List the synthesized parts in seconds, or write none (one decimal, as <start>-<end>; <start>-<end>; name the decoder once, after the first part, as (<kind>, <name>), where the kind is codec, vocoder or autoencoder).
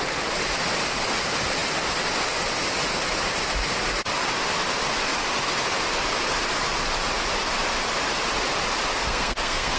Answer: 9.0-9.8 (codec, SNAC)